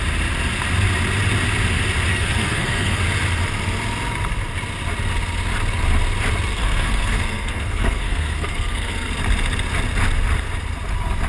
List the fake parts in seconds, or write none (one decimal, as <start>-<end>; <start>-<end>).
2.1-3.0; 6.5-9.1